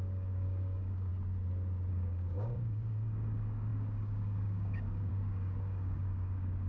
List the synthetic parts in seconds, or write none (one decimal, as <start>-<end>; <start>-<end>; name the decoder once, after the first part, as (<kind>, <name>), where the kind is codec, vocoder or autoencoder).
0.0-1.1 (codec, DAC); 1.9-6.7